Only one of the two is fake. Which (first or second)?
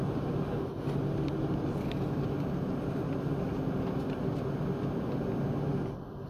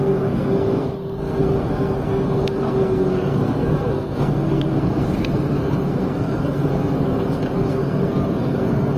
second